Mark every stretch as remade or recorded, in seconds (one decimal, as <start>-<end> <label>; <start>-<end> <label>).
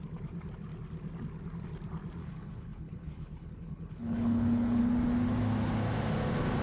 0.0-2.2 recorded; 2.2-4.8 remade; 4.8-6.6 recorded